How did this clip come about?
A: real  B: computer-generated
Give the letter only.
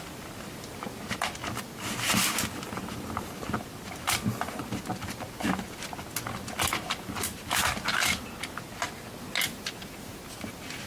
A